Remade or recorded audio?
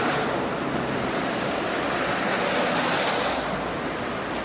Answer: recorded